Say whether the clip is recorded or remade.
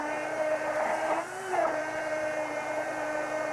remade